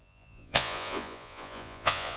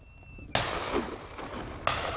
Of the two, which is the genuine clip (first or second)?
second